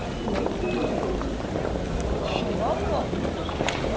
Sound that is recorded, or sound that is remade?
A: recorded